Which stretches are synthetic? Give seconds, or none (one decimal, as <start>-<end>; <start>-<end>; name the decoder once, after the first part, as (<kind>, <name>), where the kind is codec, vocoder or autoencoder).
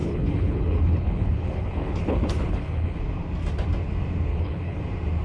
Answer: 0.0-3.0 (codec, HILCodec); 4.3-4.8